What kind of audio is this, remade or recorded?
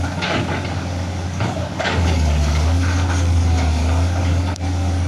remade